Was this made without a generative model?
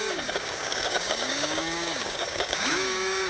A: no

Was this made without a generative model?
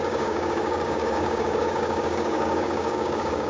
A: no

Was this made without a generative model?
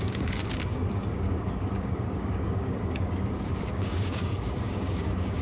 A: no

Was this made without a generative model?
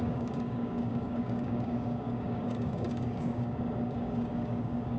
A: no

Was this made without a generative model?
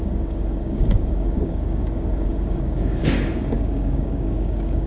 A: no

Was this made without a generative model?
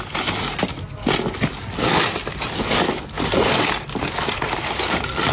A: yes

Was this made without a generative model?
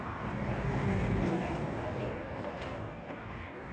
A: no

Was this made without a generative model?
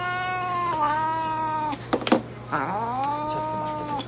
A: yes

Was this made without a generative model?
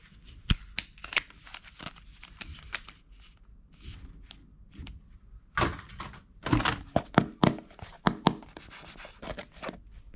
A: yes